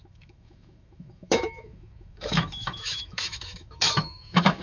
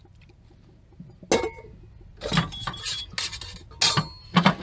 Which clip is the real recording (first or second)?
second